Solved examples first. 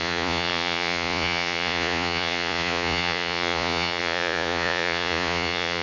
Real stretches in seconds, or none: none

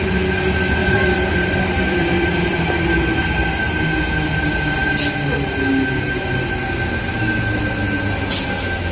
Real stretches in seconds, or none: 0.0-0.8; 2.6-8.9